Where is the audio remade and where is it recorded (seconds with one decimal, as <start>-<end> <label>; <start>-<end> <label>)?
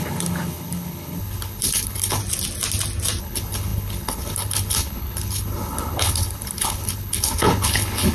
0.0-2.2 remade; 2.2-3.2 recorded; 3.2-8.1 remade